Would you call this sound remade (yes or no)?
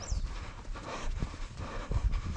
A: no